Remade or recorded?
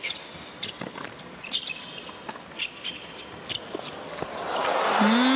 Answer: recorded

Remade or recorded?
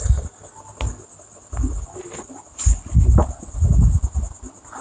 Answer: recorded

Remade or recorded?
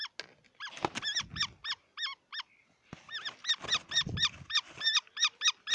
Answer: recorded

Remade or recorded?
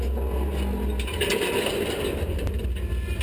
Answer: recorded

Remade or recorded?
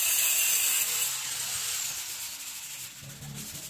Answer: recorded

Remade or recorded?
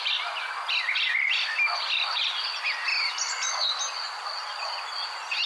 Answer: recorded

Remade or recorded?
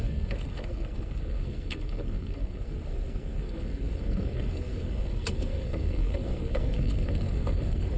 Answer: remade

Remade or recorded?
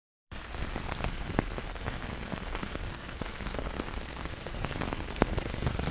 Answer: remade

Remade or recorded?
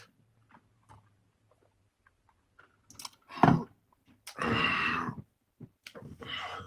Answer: recorded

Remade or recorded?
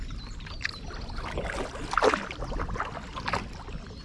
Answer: recorded